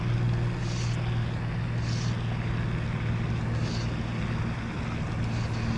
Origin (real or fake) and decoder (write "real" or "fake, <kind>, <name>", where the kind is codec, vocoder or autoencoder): real